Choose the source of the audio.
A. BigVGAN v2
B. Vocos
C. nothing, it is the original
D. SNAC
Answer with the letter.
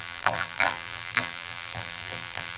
A